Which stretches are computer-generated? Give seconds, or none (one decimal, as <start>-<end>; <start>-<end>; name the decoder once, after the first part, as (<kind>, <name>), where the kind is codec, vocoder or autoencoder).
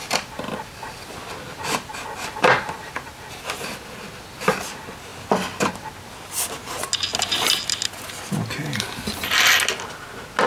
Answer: none